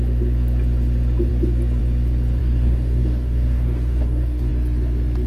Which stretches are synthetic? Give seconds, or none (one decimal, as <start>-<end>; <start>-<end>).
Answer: 2.4-4.5